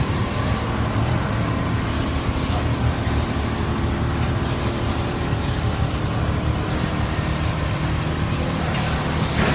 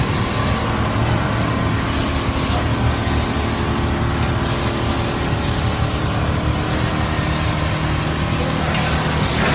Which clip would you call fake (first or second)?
first